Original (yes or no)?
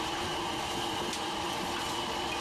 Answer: yes